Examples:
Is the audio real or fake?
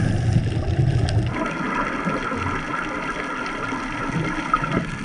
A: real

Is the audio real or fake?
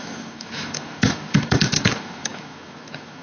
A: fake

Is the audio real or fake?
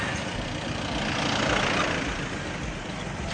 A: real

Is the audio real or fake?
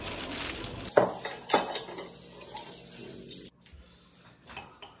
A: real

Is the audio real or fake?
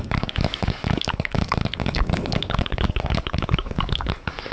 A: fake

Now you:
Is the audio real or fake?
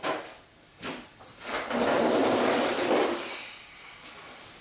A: real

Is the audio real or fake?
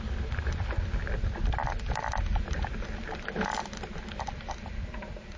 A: real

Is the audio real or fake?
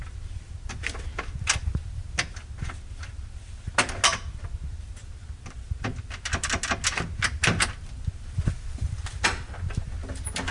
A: real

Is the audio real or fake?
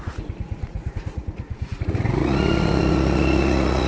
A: fake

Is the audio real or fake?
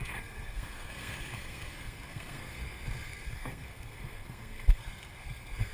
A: fake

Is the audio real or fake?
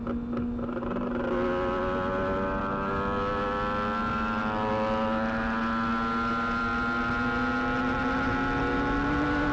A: real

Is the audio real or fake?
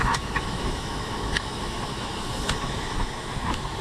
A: fake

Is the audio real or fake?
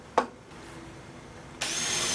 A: real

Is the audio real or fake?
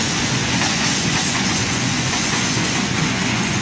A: fake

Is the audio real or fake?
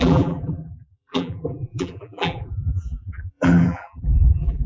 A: fake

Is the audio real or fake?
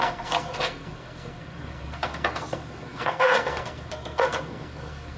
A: fake